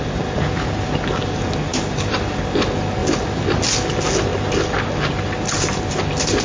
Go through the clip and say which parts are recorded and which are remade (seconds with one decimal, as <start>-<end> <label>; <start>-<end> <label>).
0.0-6.4 recorded